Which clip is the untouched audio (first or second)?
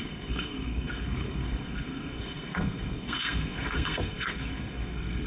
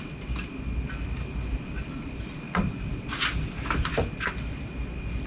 second